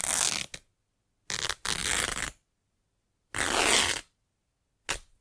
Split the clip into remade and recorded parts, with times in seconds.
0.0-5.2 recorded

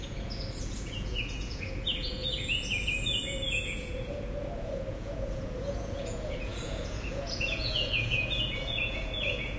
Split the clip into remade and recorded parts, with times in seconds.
0.0-9.6 remade

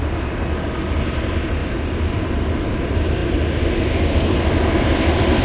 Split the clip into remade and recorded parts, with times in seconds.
0.0-5.4 recorded

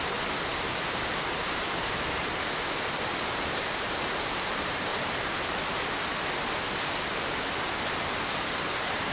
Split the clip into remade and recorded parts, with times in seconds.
0.0-4.9 remade; 4.9-8.1 recorded; 8.1-9.1 remade

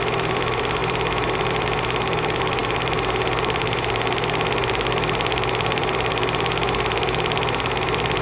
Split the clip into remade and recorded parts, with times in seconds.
0.0-8.2 remade

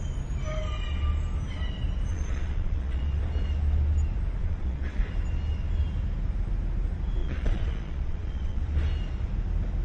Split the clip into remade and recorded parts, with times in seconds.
0.0-2.1 recorded; 2.1-3.2 remade; 3.2-4.4 recorded; 4.4-5.0 remade; 5.0-7.2 recorded; 7.2-8.6 remade; 8.6-9.8 recorded

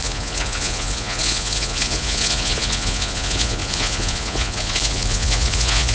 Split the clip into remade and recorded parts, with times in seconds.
0.0-5.9 remade

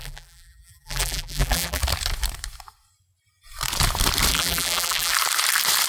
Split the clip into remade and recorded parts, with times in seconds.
0.0-1.8 remade; 1.8-4.3 recorded; 4.3-5.1 remade; 5.1-5.9 recorded